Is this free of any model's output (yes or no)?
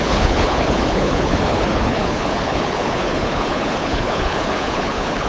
no